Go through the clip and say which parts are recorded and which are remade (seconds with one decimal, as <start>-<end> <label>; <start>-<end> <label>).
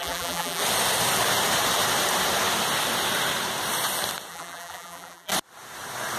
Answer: 0.0-0.6 remade; 0.6-4.3 recorded; 4.3-5.3 remade; 5.3-6.2 recorded